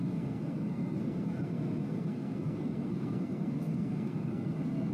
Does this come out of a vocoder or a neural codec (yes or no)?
yes